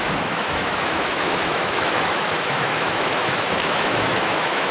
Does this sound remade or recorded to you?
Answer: remade